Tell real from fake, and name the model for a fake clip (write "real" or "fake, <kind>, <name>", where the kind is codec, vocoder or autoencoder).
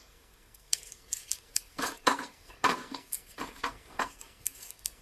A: fake, codec, SNAC